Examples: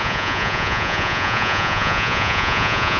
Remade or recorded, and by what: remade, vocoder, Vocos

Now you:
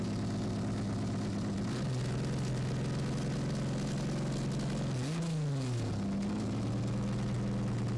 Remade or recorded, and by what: recorded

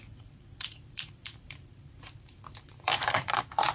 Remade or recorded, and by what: remade, vocoder, BigVGAN v2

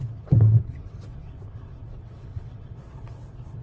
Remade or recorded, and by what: remade, vocoder, WaveNeXt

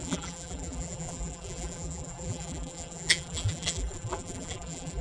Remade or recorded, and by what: remade, vocoder, BigVGAN v2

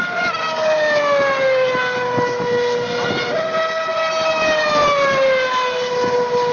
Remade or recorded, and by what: recorded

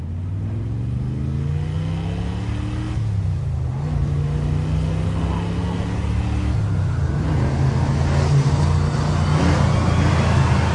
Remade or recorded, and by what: recorded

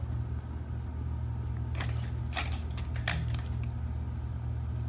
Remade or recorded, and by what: recorded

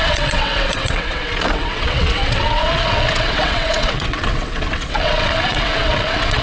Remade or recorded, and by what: remade, vocoder, WaveNeXt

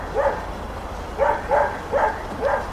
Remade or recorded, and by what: recorded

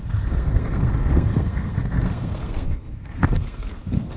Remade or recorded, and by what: remade, codec, SNAC